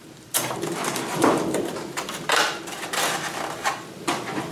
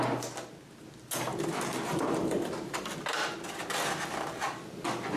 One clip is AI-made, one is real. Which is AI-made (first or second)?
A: first